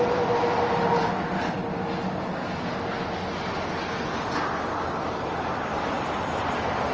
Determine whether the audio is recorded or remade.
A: recorded